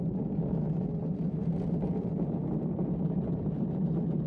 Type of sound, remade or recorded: recorded